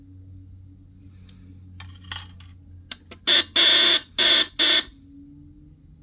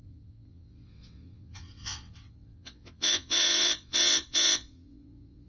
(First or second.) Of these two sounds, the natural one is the first